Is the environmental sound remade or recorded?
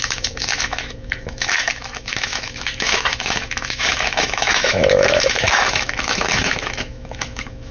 remade